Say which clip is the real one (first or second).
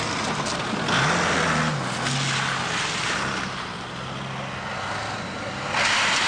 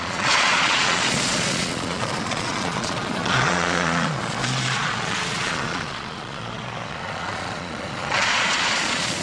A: first